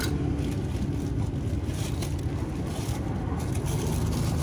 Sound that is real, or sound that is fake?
real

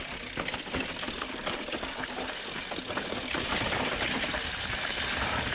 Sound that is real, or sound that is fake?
real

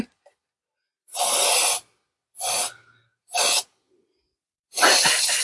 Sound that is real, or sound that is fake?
real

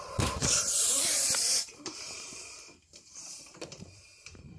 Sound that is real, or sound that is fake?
fake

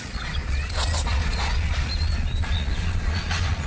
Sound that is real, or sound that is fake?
fake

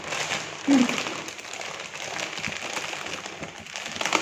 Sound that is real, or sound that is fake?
real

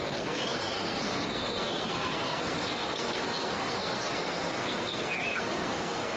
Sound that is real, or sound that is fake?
fake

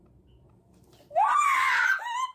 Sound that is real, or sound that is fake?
real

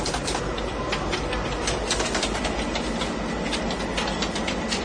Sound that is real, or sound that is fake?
real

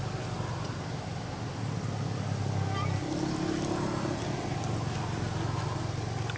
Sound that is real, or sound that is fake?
real